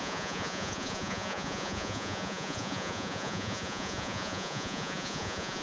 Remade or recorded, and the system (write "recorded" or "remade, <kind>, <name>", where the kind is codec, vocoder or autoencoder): remade, vocoder, Vocos